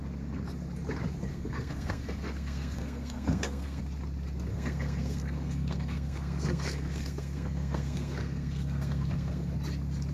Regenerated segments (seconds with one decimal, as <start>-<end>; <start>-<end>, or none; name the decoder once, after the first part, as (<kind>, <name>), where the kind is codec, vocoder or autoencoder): 1.3-3.8 (codec, SNAC); 4.5-9.5